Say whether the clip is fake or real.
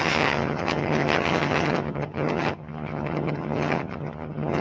fake